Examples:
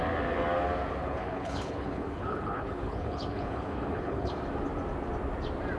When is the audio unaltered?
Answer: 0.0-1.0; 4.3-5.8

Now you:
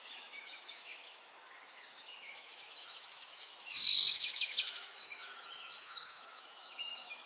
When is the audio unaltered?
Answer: none

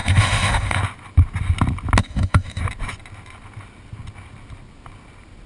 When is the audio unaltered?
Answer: 0.8-2.0; 2.6-5.5

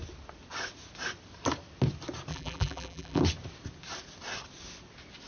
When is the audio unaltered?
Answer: 0.0-2.3; 3.2-5.3